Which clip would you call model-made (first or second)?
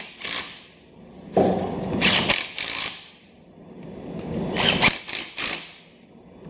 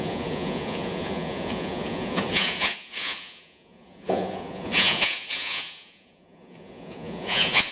second